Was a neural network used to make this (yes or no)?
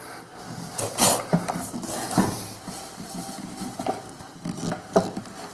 no